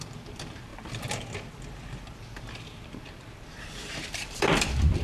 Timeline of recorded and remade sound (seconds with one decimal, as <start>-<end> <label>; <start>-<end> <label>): 0.0-0.7 remade; 0.7-2.1 recorded; 2.1-5.0 remade